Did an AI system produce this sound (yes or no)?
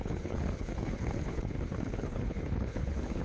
yes